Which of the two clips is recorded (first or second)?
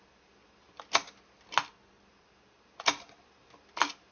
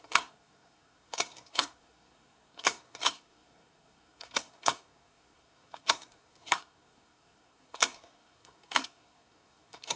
first